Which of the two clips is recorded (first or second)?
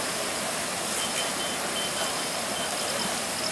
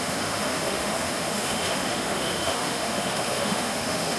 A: first